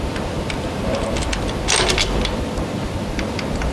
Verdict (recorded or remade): recorded